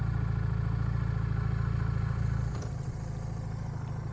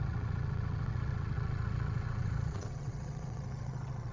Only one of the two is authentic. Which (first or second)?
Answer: first